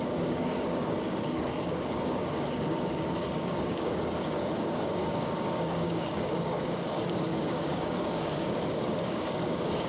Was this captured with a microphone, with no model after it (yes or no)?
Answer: no